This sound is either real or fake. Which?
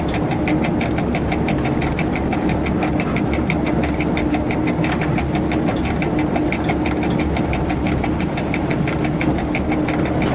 real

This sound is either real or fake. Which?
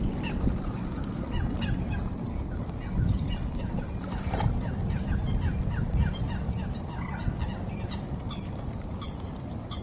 real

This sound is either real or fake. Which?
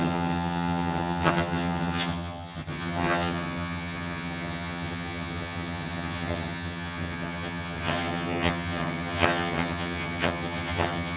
fake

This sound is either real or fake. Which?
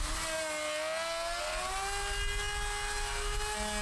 real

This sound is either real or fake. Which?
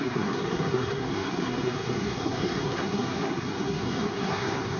fake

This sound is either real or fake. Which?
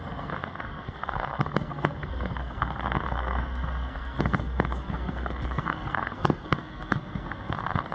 fake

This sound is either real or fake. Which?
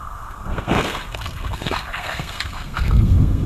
fake